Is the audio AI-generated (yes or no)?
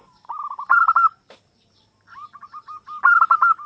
no